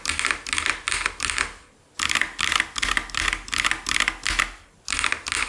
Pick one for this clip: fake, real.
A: real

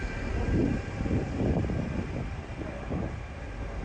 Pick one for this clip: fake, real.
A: real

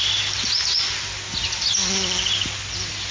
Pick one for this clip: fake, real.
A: real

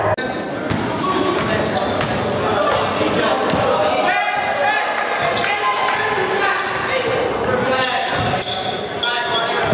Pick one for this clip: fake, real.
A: real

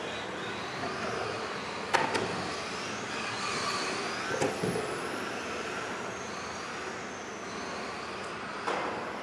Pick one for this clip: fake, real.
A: real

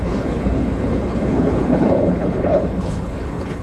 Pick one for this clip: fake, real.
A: fake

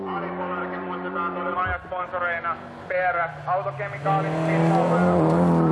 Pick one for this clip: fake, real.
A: real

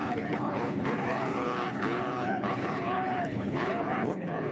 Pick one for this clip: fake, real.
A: fake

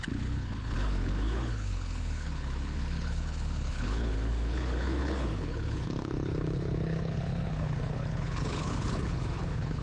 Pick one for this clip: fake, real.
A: fake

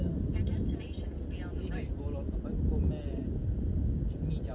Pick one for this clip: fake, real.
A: real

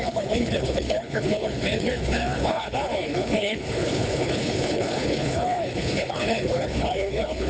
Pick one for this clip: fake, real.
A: fake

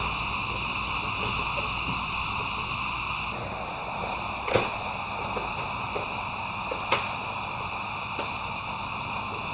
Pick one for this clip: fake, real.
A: real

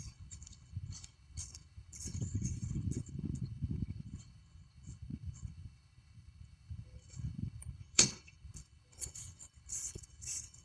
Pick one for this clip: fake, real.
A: fake